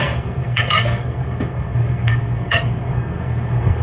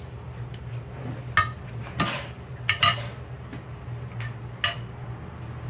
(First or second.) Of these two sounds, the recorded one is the second